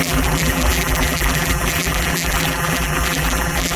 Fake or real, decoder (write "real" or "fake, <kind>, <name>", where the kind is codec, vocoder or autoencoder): fake, vocoder, BigVGAN v2